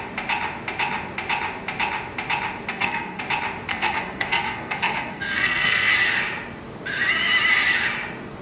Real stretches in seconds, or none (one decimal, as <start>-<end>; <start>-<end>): 0.0-2.7; 3.2-3.7; 5.9-8.4